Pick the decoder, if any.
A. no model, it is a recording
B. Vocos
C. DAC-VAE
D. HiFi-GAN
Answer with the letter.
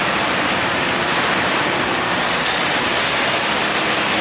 A